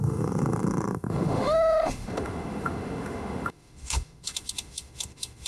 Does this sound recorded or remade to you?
remade